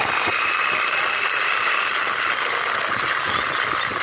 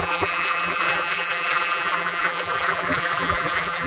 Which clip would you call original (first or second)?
first